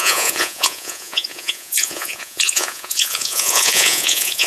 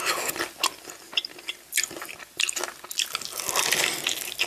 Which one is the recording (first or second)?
second